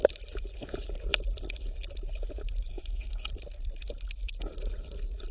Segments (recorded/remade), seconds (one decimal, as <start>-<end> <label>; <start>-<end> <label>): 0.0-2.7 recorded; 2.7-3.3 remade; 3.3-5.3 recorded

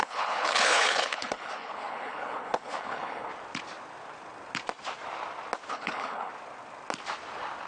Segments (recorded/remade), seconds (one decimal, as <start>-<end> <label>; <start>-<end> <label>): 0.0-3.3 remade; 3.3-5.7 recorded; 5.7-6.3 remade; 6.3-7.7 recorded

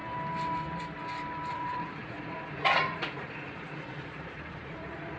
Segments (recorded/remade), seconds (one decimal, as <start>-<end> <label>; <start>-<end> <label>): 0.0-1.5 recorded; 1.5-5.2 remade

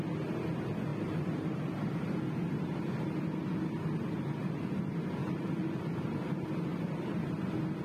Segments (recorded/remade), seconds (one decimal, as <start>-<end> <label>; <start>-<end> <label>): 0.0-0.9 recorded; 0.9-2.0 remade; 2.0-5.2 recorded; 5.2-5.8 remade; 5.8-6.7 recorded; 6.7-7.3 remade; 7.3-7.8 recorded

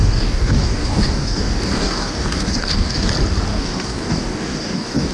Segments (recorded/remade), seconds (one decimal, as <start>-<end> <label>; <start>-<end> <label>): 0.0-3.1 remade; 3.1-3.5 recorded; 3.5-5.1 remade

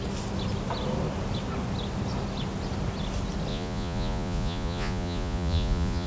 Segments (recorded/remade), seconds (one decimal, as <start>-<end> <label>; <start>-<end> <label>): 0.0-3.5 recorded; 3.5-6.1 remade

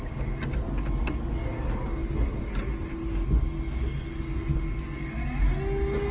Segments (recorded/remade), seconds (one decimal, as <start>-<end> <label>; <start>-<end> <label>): 0.0-6.1 recorded